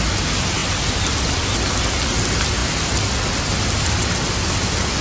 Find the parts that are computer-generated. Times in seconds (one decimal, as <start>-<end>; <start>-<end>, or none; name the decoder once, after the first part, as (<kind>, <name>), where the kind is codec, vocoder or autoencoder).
none